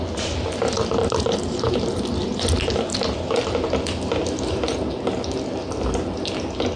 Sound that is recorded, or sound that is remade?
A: recorded